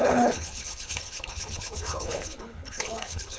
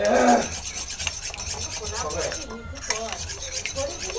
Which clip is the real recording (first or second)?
second